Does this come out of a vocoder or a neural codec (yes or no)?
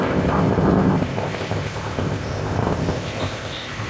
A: yes